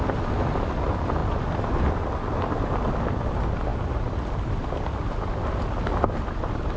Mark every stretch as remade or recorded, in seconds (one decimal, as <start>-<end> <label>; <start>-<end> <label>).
0.0-6.8 recorded